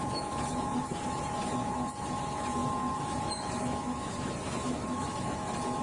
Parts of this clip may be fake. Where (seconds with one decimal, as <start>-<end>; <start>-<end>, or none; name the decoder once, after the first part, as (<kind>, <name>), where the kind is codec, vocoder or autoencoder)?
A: 0.0-5.8 (autoencoder, DAC-VAE)